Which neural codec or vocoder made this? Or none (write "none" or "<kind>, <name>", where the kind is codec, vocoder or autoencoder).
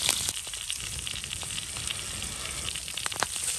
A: none